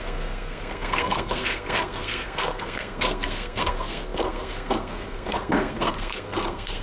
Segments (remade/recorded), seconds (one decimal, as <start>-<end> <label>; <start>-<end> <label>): 0.0-6.8 remade